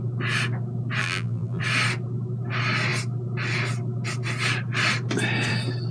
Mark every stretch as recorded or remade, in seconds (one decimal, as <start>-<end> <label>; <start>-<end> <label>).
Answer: 0.0-1.0 recorded; 1.0-1.6 remade; 1.6-5.9 recorded